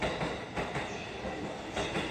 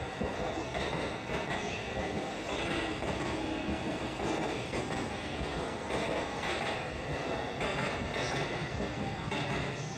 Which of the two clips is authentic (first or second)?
first